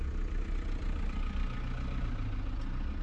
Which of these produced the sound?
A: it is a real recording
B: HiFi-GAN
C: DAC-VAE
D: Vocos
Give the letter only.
A